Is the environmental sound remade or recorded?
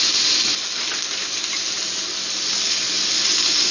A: recorded